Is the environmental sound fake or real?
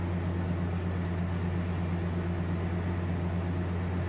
real